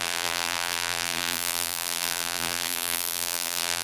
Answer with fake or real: fake